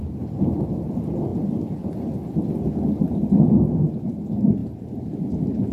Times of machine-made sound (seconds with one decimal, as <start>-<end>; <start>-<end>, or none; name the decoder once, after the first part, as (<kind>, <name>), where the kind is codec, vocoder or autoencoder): 4.6-5.2 (vocoder, BigVGAN v2)